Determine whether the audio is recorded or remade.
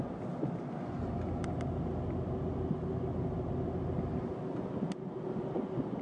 recorded